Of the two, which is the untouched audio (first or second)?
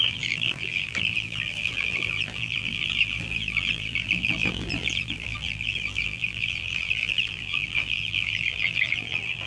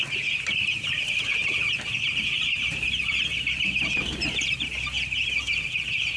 second